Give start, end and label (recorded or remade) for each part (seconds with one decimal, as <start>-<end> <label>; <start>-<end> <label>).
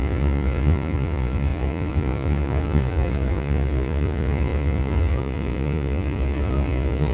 0.0-7.1 remade